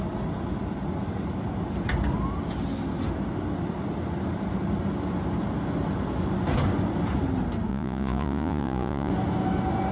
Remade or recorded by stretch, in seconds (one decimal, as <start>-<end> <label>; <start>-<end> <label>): 0.0-7.7 recorded; 7.7-9.1 remade; 9.1-9.9 recorded